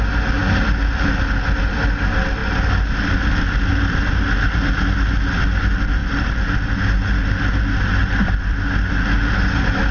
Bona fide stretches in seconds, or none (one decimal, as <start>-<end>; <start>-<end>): 0.0-8.0; 8.7-9.9